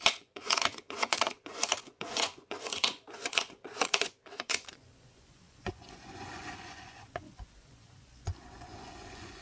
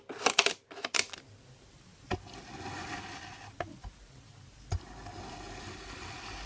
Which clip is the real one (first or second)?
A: second